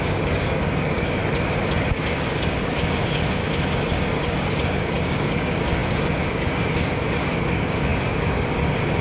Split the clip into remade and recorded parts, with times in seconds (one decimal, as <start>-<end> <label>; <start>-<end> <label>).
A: 0.0-1.2 remade; 1.2-1.9 recorded; 1.9-3.2 remade; 3.2-3.9 recorded; 3.9-9.0 remade